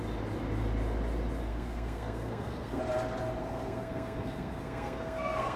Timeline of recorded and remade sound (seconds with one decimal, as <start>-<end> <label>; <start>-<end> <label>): 0.0-1.5 recorded; 1.5-2.8 remade; 2.8-3.4 recorded; 3.4-5.6 remade